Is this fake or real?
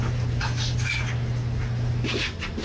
real